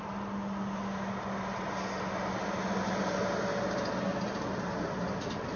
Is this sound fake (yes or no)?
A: no